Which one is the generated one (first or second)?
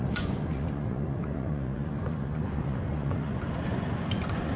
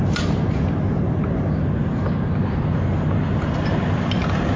first